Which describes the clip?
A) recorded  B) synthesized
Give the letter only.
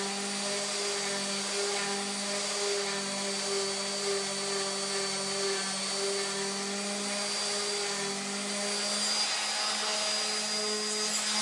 A